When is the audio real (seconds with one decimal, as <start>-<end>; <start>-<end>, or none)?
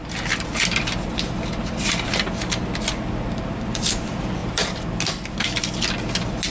0.0-4.4; 4.9-6.5